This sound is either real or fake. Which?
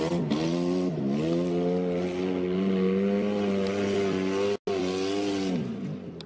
real